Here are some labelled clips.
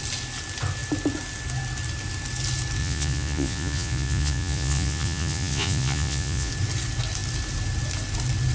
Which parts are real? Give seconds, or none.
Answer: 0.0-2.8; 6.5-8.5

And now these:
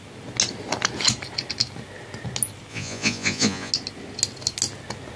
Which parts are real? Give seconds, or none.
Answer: 0.0-2.7; 3.7-5.2

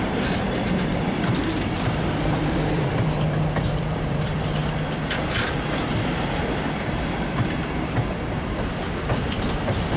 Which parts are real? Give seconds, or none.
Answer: 4.6-6.3

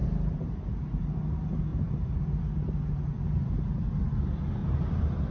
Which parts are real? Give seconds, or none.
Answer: 1.1-1.7; 3.5-4.6